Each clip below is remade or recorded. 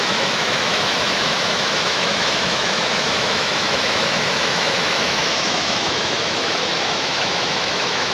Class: remade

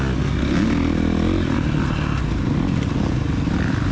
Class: recorded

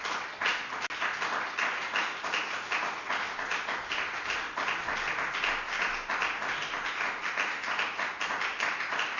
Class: recorded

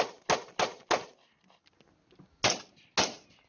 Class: recorded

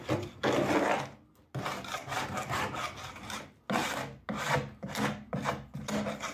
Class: recorded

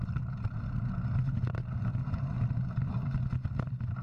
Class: recorded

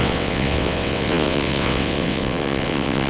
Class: remade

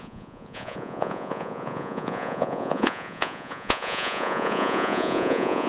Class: remade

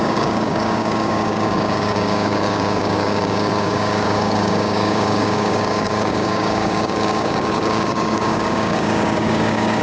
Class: remade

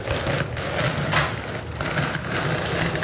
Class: recorded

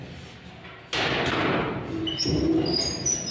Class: recorded